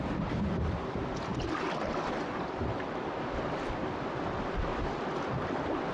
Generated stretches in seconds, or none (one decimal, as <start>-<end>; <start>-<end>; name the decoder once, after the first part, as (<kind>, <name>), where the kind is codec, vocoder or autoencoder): none